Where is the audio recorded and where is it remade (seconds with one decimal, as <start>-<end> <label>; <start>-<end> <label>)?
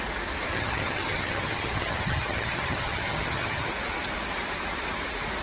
0.0-0.5 recorded; 0.5-3.7 remade; 3.7-5.4 recorded